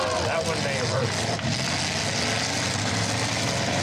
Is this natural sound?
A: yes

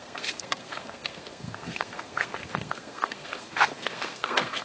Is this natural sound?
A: no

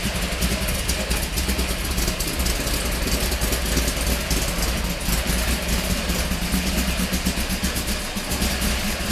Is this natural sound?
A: yes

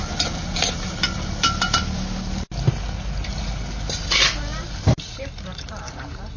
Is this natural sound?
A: yes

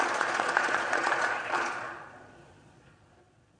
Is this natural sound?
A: no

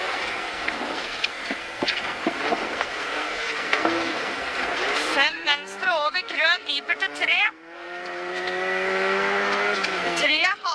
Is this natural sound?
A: no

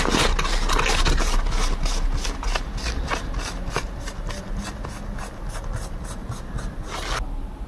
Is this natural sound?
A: yes